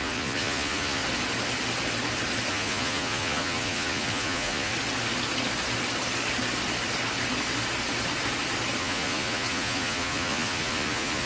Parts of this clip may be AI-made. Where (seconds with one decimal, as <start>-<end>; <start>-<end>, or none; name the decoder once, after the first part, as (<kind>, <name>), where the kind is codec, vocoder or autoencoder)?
0.0-1.0 (vocoder, Vocos); 2.5-4.7; 8.8-11.3